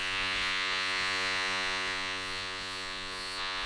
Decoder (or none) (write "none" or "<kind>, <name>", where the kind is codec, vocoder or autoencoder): vocoder, Vocos